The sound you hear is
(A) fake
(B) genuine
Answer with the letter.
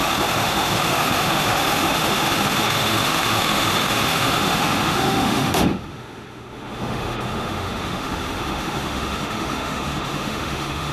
A